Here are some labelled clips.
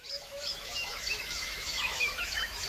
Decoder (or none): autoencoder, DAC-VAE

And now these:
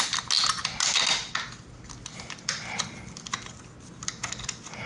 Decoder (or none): none